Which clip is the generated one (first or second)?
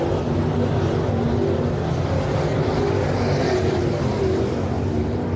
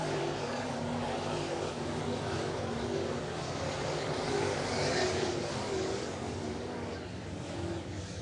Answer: second